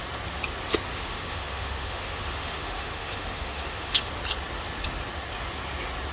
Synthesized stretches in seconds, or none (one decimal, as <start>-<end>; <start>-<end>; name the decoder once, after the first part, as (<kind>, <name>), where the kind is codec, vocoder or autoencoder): 0.9-4.1 (autoencoder, DAC-VAE)